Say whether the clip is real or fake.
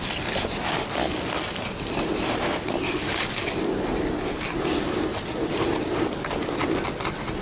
real